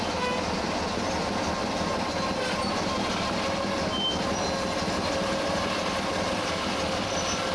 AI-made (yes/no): no